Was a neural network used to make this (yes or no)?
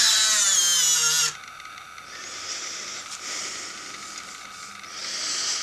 no